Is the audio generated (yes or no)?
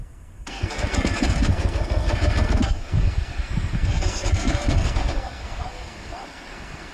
yes